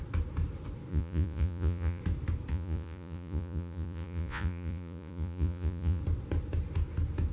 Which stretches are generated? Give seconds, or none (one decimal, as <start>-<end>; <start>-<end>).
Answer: 0.9-2.0; 2.5-6.0